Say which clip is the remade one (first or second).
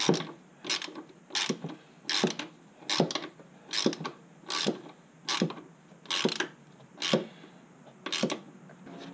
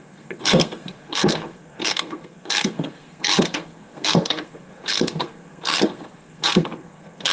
second